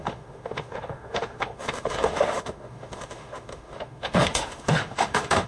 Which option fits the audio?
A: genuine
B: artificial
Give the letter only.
B